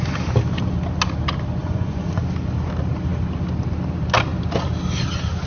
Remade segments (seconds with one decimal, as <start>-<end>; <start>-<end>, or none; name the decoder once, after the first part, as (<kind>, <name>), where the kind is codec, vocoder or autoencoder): 1.6-2.2 (vocoder, Vocos)